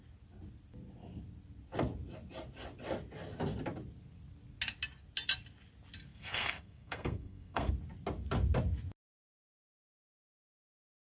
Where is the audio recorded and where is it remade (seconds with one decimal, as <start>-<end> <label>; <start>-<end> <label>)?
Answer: 0.0-6.1 recorded; 6.1-7.7 remade; 7.7-11.0 recorded